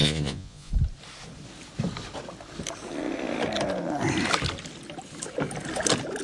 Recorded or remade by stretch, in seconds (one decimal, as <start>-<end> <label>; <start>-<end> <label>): 0.0-0.7 remade; 0.7-6.2 recorded